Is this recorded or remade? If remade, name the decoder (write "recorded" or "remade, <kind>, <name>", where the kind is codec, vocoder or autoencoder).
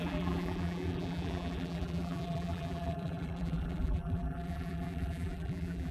remade, vocoder, BigVGAN v2